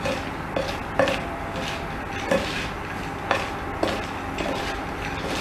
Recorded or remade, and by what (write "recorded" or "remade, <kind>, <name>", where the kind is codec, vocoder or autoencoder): recorded